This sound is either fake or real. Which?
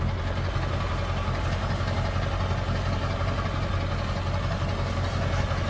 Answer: real